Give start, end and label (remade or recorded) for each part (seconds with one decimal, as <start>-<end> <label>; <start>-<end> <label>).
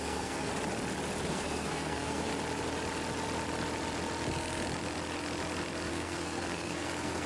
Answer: 0.0-0.5 remade; 0.5-1.3 recorded; 1.3-2.3 remade; 2.3-5.9 recorded; 5.9-7.3 remade